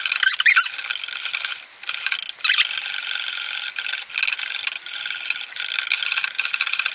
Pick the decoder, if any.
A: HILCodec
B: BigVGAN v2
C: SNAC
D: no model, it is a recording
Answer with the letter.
D